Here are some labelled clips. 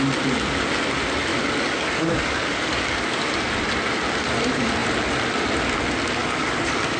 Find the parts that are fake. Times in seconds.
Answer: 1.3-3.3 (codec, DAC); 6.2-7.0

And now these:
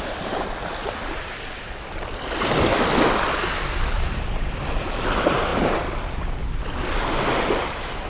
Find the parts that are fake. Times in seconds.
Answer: none